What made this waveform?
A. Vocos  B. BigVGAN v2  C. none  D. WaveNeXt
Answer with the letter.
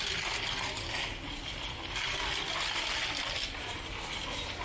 C